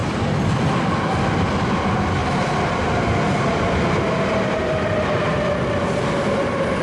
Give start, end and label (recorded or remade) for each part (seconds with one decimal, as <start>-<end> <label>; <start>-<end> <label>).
0.0-6.8 recorded